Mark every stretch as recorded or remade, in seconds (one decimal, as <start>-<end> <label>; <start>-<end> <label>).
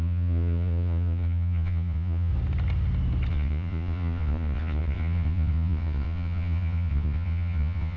0.0-2.3 remade; 2.3-3.3 recorded; 3.3-8.0 remade